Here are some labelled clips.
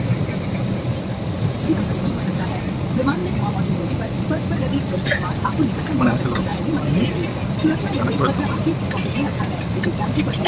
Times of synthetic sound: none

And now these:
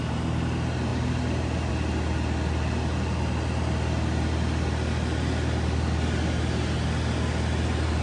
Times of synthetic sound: none

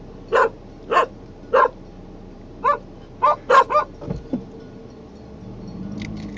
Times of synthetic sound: none

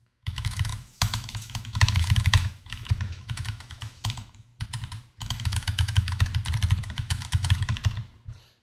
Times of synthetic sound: 0.0-4.5 (autoencoder, DAC-VAE); 5.2-6.3; 6.8-7.8

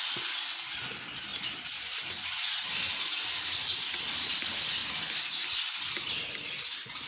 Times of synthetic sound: none